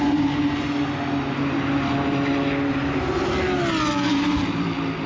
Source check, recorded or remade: recorded